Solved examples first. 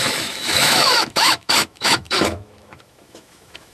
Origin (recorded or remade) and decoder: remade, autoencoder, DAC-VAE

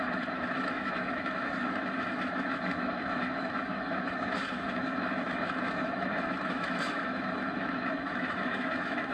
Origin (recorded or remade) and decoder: remade, autoencoder, DAC-VAE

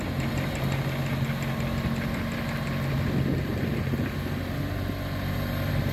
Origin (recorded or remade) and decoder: recorded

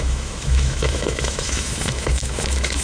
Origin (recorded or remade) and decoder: remade, autoencoder, DAC-VAE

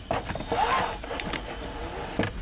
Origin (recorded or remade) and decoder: recorded